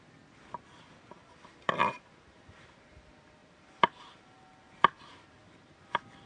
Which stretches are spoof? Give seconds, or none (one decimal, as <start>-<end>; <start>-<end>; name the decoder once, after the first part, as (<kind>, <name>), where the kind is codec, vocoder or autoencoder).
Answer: 1.2-2.9 (vocoder, BigVGAN v2); 3.4-6.3